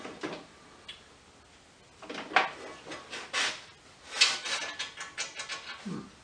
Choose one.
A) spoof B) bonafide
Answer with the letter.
B